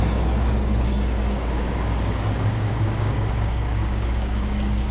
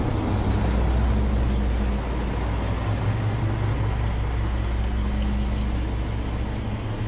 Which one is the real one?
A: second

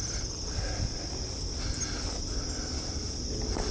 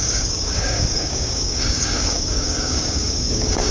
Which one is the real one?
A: first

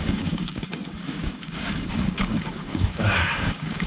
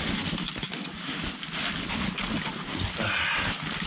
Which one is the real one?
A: second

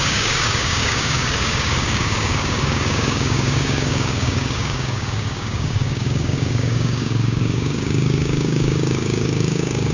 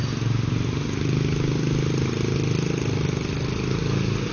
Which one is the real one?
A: second